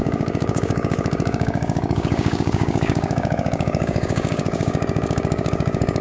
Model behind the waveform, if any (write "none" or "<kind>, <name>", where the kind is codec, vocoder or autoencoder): codec, DAC